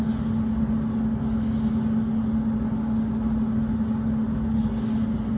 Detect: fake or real real